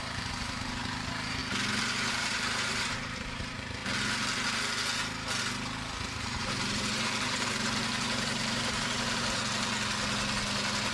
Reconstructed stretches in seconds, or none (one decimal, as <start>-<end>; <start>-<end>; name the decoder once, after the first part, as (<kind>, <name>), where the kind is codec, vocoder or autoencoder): 0.0-1.4 (vocoder, BigVGAN v2); 2.1-3.8; 6.0-9.4